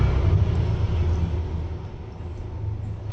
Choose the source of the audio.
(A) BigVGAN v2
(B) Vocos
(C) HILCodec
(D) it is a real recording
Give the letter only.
D